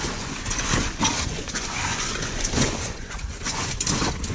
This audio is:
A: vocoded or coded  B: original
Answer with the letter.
A